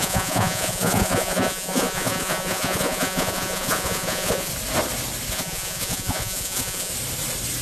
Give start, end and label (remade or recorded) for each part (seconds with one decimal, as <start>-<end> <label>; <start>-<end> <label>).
0.0-4.5 remade; 4.5-5.3 recorded; 5.3-6.9 remade; 6.9-7.6 recorded